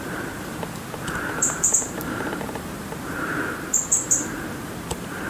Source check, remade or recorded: remade